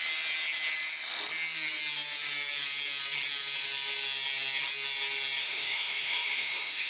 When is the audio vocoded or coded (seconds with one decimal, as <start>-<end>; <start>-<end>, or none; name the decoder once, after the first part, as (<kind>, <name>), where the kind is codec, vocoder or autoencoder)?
5.4-6.9 (autoencoder, DAC-VAE)